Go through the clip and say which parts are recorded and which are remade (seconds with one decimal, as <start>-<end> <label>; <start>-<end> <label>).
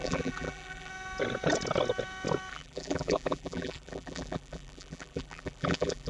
0.0-0.9 remade; 0.9-2.5 recorded; 2.5-6.1 remade